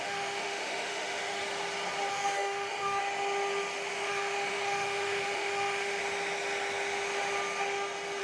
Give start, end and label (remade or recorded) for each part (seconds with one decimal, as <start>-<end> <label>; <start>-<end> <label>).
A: 0.0-1.4 remade; 1.4-2.1 recorded; 2.1-3.0 remade; 3.0-3.9 recorded; 3.9-6.0 remade; 6.0-8.2 recorded